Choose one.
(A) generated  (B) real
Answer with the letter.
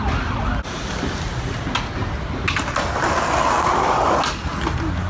B